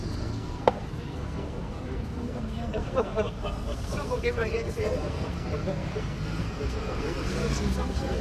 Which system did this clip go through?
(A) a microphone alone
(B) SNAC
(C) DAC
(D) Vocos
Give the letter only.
B